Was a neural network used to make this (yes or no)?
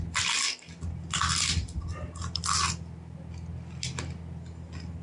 no